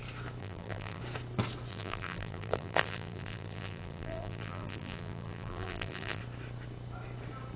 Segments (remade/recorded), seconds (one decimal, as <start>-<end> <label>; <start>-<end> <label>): 0.0-0.4 recorded; 0.4-1.0 remade; 1.0-1.7 recorded; 1.7-6.2 remade; 6.2-7.6 recorded